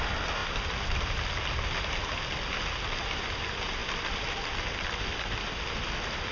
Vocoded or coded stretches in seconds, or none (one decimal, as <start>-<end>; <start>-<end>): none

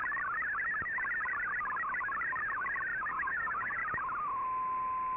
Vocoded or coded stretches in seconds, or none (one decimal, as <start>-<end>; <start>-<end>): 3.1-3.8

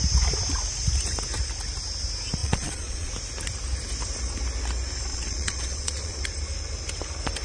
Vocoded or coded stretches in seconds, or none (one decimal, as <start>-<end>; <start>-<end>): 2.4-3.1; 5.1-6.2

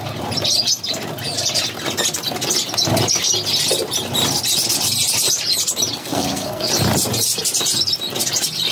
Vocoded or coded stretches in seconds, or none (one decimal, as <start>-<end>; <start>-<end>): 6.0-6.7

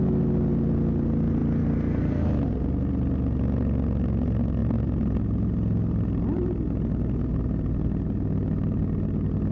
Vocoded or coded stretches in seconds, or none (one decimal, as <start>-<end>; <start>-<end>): none